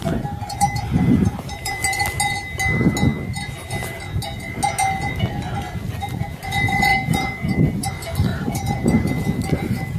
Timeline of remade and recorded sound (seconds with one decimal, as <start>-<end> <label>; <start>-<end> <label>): 0.0-0.4 recorded; 0.4-1.7 remade; 1.7-6.9 recorded; 6.9-7.9 remade; 7.9-8.3 recorded; 8.3-9.2 remade; 9.2-10.0 recorded